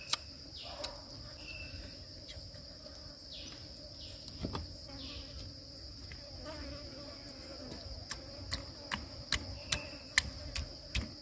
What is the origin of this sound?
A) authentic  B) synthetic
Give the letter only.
A